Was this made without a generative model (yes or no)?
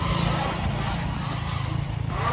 yes